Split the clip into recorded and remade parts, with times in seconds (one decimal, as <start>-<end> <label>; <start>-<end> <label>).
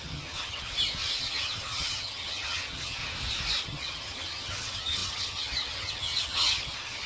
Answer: 0.0-0.7 remade; 0.7-1.2 recorded; 1.2-3.0 remade; 3.0-3.6 recorded; 3.6-7.1 remade